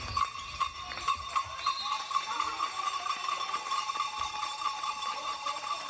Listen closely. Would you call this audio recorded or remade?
remade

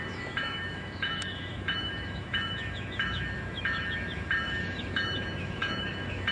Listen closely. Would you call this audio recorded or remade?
remade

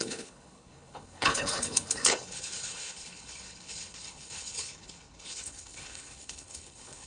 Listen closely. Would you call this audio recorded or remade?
remade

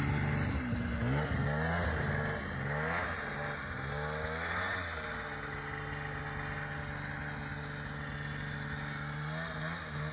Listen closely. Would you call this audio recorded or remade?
recorded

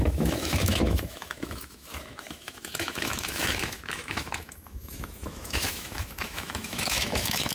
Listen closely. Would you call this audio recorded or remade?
remade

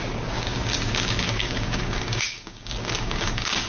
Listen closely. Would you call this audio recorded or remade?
remade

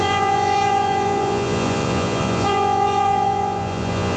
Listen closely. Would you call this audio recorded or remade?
remade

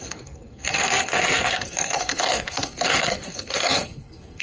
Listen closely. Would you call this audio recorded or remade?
remade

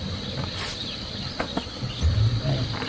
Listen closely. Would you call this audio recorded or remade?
recorded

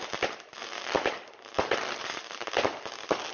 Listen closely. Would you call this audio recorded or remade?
recorded